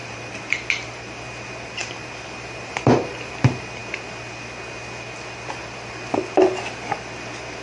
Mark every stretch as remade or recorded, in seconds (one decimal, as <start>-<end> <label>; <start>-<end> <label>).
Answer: 0.0-0.5 remade; 0.5-1.8 recorded; 1.8-3.3 remade; 3.3-7.6 recorded